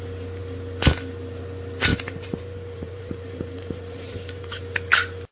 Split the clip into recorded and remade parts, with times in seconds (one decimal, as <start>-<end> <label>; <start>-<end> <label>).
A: 0.0-1.9 recorded; 1.9-4.6 remade; 4.6-5.3 recorded